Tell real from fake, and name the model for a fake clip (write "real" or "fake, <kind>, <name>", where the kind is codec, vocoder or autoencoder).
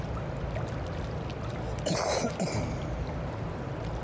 real